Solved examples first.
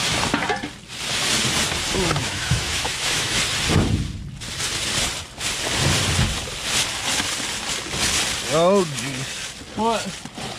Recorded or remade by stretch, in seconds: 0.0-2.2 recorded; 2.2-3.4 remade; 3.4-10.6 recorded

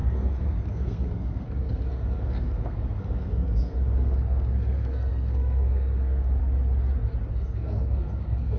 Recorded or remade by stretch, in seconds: 0.0-6.4 remade; 6.4-7.3 recorded; 7.3-8.6 remade

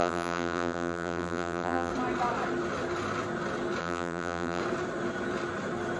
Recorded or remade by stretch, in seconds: 0.0-1.9 remade; 1.9-3.8 recorded; 3.8-4.6 remade; 4.6-6.0 recorded

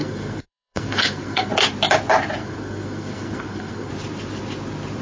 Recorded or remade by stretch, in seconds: 0.0-1.5 remade; 1.5-2.4 recorded; 2.4-3.9 remade; 3.9-5.0 recorded